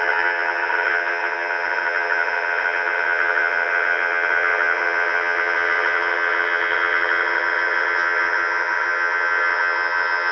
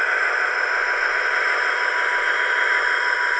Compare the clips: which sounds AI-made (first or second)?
first